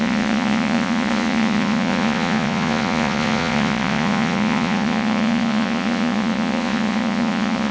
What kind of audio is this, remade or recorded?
remade